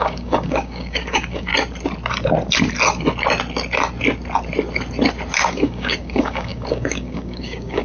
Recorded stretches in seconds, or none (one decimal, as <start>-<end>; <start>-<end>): 1.5-5.5